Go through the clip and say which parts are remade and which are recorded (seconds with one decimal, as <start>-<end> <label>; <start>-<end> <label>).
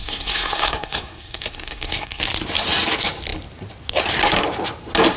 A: 0.0-2.2 remade; 2.2-5.2 recorded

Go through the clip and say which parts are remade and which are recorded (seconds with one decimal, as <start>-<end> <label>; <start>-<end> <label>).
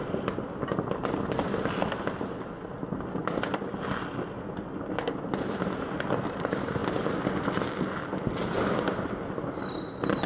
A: 0.0-10.3 recorded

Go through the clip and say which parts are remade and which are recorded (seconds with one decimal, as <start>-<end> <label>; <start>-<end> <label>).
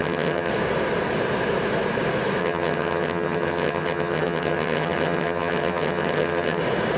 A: 0.0-0.5 remade; 0.5-2.4 recorded; 2.4-6.6 remade; 6.6-7.0 recorded